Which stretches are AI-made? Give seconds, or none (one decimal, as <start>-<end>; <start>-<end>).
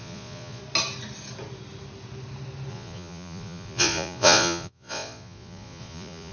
0.0-0.6; 2.7-6.3